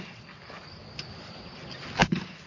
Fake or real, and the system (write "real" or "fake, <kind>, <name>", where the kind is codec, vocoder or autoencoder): real